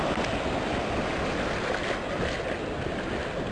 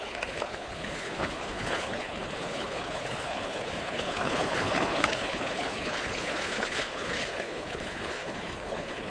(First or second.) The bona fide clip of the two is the first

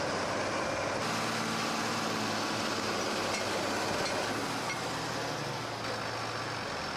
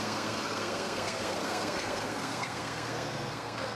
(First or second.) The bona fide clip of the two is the first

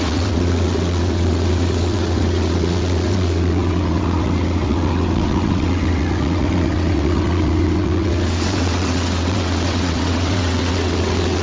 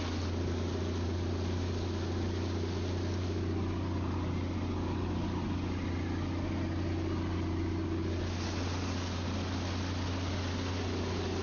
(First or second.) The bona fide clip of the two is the second